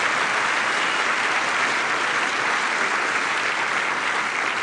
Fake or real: real